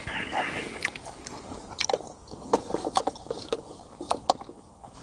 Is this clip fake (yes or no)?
yes